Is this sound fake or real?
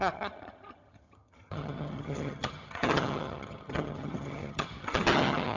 fake